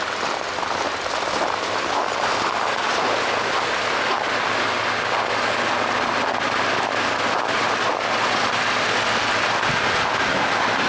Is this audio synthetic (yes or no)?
no